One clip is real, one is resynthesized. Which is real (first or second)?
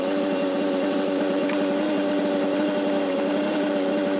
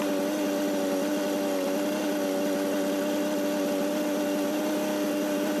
second